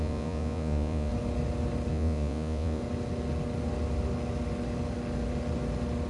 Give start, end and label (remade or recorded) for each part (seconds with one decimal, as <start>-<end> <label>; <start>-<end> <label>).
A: 0.0-1.1 remade; 1.1-1.9 recorded; 1.9-2.8 remade; 2.8-6.1 recorded